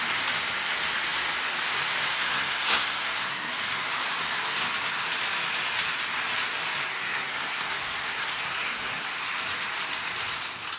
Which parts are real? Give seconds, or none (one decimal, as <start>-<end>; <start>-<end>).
0.0-2.1; 3.5-6.9; 9.1-10.8